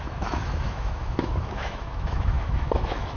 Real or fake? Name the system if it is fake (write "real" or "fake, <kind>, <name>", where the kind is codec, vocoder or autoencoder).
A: fake, autoencoder, DAC-VAE